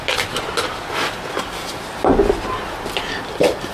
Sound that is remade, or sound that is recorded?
recorded